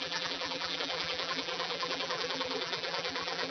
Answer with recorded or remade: remade